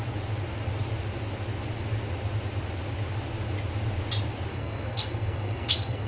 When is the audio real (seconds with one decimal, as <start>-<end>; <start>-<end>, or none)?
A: 0.0-4.5